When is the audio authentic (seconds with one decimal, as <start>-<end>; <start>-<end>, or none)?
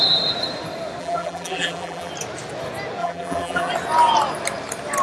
0.0-1.0; 2.1-3.0; 3.7-5.0